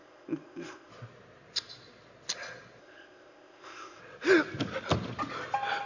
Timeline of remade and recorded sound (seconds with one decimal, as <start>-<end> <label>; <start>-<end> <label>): 0.0-0.9 remade; 0.9-2.8 recorded; 2.8-4.0 remade; 4.0-5.9 recorded